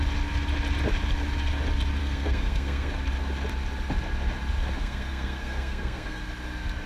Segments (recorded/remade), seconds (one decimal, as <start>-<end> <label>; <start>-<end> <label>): 0.0-2.0 recorded; 2.0-2.9 remade; 2.9-4.8 recorded; 4.8-6.2 remade; 6.2-6.9 recorded

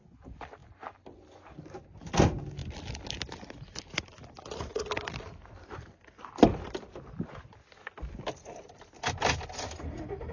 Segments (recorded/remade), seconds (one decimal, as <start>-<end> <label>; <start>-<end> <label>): 0.0-10.3 recorded

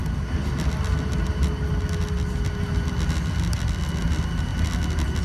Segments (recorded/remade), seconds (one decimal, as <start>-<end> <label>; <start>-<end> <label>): 0.0-5.2 recorded

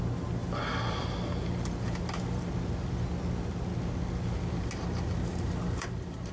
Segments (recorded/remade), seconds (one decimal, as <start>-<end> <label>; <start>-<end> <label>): 0.0-6.3 recorded

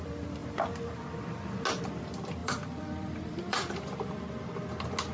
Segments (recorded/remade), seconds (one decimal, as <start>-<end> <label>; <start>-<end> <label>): 0.0-2.4 recorded; 2.4-4.2 remade; 4.2-5.1 recorded

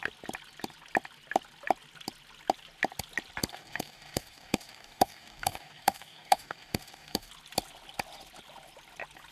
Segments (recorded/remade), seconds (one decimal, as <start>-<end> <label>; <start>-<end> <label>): 0.0-3.5 recorded; 3.5-7.3 remade; 7.3-9.3 recorded

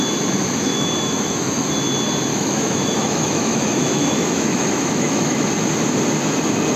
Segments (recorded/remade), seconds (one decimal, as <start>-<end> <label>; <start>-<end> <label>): 0.0-0.7 recorded; 0.7-1.7 remade; 1.7-2.3 recorded; 2.3-5.5 remade; 5.5-6.8 recorded